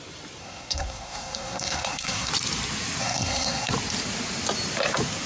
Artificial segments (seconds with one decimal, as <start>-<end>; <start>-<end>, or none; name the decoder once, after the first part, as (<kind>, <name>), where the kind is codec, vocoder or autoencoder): 0.4-2.3 (codec, SNAC); 3.0-3.7